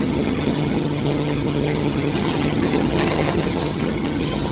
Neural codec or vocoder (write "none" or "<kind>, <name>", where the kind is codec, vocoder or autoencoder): vocoder, HiFi-GAN